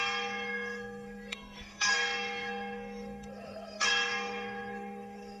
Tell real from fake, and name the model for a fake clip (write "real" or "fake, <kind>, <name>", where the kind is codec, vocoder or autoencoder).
fake, codec, SNAC